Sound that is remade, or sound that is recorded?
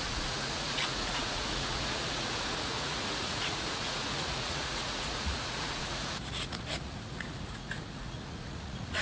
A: remade